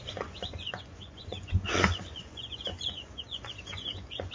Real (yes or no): no